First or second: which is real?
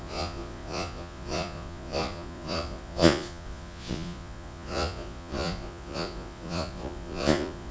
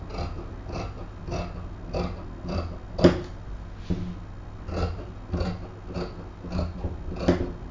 second